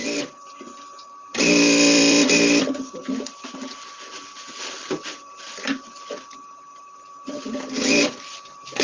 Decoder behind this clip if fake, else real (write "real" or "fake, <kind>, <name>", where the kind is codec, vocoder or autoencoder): fake, vocoder, BigVGAN v2